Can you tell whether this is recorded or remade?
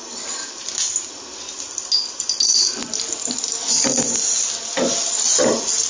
recorded